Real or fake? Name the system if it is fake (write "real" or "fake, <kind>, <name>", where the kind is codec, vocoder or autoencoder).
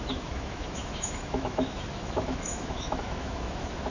fake, autoencoder, DAC-VAE